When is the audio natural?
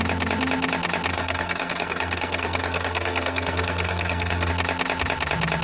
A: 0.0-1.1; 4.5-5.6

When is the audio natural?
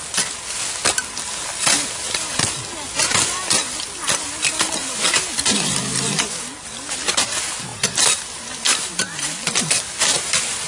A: 0.0-10.7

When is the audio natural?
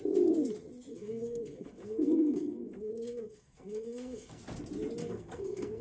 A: 0.0-0.9; 4.4-5.0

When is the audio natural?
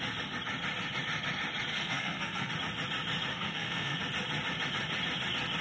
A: 0.0-1.7; 2.5-3.3; 4.0-5.6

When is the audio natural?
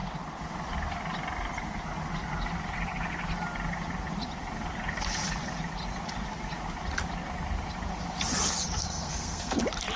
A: 0.0-8.8; 9.6-10.0